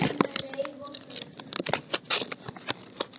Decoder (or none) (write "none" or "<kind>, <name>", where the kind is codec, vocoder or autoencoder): none